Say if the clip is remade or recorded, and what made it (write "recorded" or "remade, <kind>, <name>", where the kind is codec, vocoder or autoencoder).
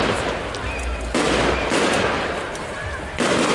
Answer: recorded